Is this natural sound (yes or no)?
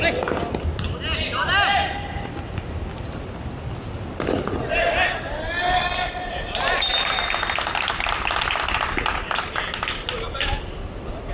yes